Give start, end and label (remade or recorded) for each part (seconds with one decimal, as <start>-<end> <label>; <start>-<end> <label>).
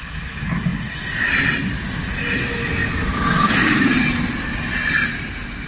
0.0-2.8 recorded; 2.8-4.0 remade; 4.0-5.7 recorded